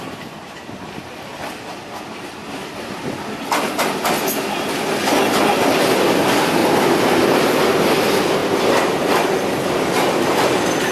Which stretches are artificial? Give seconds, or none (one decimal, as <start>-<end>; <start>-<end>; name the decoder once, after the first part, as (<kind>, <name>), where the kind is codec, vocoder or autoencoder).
0.0-6.6 (vocoder, BigVGAN v2); 7.2-8.4; 8.9-10.9

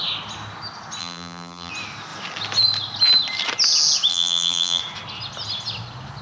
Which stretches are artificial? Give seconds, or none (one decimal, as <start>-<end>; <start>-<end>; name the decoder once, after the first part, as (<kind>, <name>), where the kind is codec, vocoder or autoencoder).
1.0-1.7 (vocoder, BigVGAN v2); 4.1-4.8